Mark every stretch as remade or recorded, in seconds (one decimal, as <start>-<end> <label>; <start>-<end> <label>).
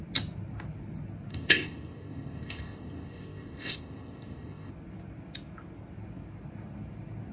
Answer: 0.0-1.3 recorded; 1.3-4.7 remade; 4.7-7.3 recorded